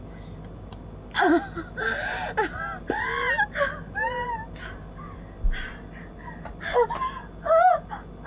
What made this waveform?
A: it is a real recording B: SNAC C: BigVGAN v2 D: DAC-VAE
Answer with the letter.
A